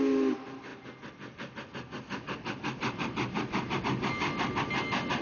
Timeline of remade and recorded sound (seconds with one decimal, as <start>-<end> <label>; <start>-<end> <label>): 0.0-5.2 recorded